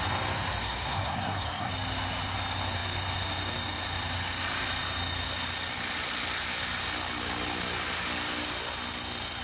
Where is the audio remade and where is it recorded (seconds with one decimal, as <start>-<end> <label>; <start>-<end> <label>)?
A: 0.0-0.6 recorded; 0.6-1.7 remade; 1.7-9.4 recorded